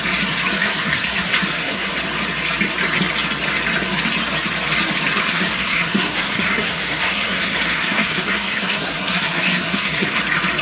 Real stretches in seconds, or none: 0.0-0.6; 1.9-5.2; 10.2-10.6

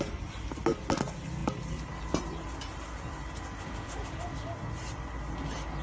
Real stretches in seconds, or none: 0.0-5.8